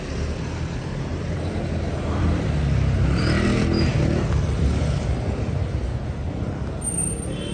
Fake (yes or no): no